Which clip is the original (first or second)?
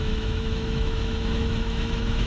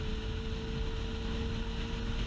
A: second